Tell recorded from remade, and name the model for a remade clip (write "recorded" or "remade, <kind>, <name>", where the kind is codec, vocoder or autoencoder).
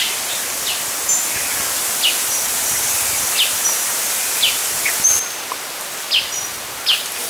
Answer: recorded